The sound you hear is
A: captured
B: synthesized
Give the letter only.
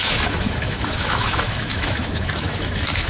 B